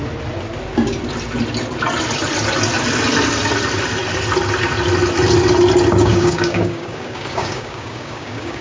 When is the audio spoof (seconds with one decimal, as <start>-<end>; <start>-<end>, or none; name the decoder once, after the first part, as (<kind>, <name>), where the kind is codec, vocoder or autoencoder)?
6.0-8.6 (codec, DAC)